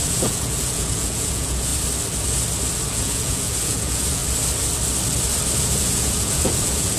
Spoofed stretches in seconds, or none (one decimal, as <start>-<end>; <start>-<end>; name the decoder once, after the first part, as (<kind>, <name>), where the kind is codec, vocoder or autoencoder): 0.0-1.7 (vocoder, Vocos); 2.9-4.2; 5.6-7.0